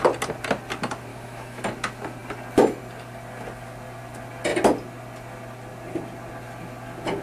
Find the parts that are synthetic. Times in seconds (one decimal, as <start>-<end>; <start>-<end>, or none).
1.1-1.6